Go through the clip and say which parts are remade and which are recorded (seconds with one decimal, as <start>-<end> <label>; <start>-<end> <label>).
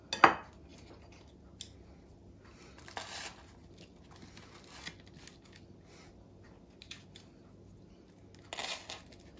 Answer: 0.0-9.4 recorded